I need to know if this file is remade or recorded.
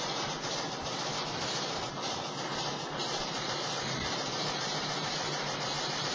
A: remade